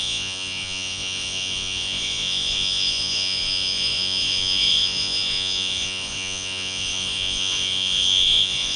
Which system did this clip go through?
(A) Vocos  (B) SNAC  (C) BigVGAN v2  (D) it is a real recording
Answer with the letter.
A